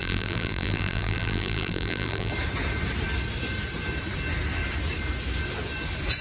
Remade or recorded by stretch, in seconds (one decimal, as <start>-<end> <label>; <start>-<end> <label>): 0.0-2.3 remade; 2.3-6.2 recorded